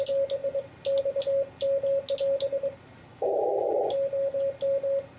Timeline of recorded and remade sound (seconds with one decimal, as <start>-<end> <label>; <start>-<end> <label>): 0.0-3.1 recorded; 3.1-3.7 remade; 3.7-5.2 recorded